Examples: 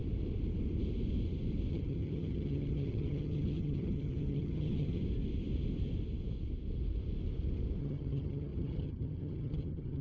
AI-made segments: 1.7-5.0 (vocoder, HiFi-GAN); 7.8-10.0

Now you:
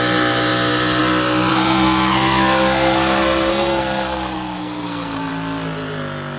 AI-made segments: 1.5-5.3 (codec, SNAC)

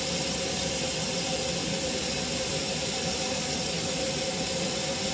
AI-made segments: none

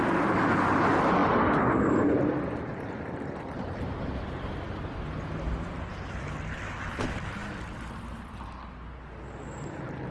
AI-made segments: none

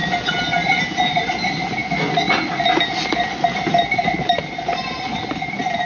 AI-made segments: 0.8-1.8 (vocoder, BigVGAN v2); 3.9-4.3; 5.5-5.9

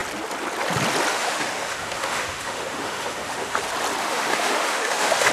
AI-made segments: 1.1-3.6 (autoencoder, DAC-VAE); 4.0-5.3

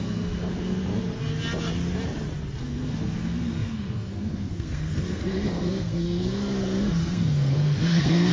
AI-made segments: 0.0-0.8 (codec, SNAC); 2.6-8.3